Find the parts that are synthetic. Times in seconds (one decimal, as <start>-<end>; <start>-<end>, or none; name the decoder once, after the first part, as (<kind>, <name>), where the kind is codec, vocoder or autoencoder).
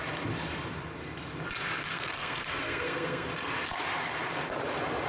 1.9-3.3 (codec, SNAC)